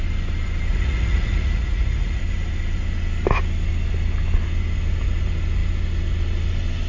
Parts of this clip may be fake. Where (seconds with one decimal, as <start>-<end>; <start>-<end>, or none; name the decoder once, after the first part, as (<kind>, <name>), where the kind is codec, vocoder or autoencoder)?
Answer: 0.7-2.2 (vocoder, Vocos)